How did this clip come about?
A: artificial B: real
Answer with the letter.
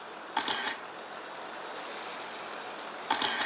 B